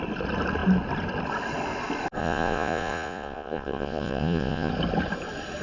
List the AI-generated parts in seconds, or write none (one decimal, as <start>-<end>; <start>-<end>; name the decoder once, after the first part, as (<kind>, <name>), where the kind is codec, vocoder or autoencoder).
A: 2.2-4.7 (vocoder, Vocos)